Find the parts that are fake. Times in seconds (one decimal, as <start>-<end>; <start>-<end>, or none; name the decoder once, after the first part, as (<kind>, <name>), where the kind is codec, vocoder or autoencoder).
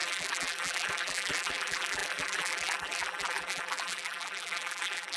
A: 0.0-5.2 (vocoder, BigVGAN v2)